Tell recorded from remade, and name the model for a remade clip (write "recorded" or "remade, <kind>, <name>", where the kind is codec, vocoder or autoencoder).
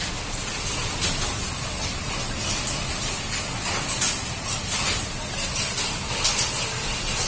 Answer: recorded